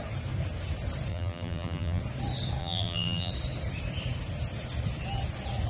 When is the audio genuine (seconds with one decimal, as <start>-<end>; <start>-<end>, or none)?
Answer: 0.0-1.1; 2.0-2.6; 3.3-5.7